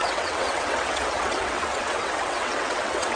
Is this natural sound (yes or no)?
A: no